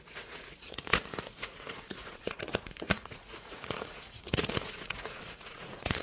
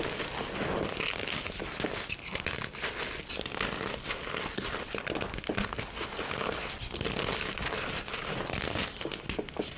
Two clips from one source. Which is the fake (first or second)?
first